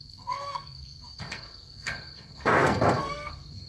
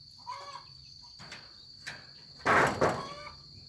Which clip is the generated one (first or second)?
first